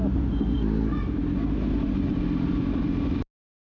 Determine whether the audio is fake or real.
real